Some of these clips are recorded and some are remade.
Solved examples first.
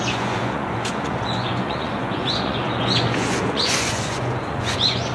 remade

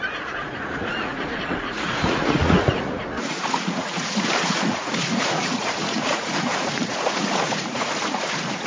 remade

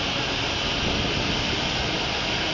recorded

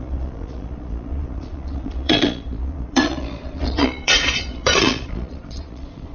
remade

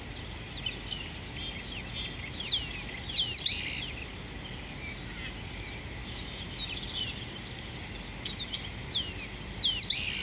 recorded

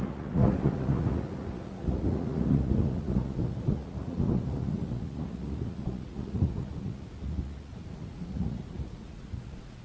remade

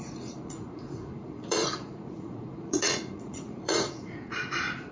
remade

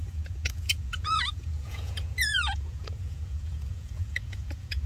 remade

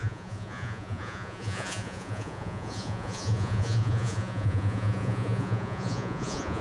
remade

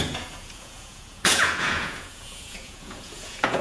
remade